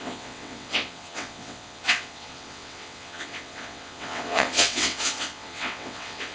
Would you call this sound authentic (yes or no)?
no